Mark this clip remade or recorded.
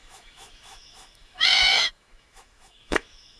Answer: remade